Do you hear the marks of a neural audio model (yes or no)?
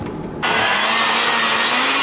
no